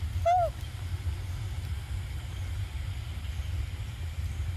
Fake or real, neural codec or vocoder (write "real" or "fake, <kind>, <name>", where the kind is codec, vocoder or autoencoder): real